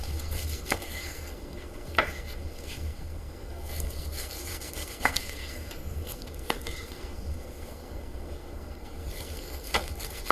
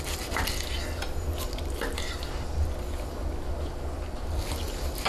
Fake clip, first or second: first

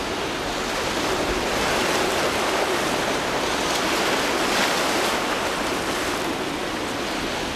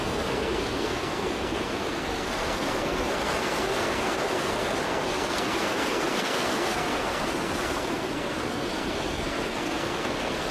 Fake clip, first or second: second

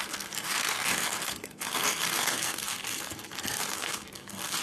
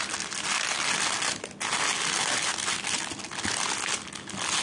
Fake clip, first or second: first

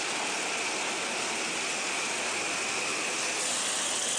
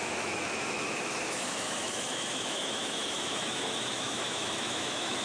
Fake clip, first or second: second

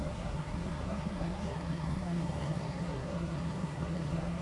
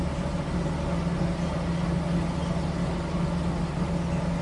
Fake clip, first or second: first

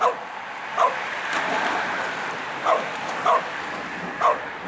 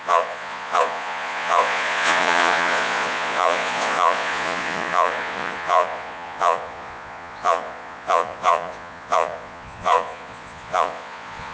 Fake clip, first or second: second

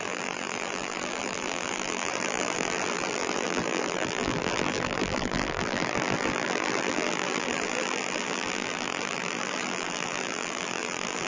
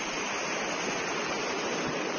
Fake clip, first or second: first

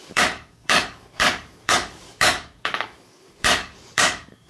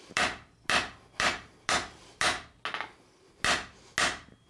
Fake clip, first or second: first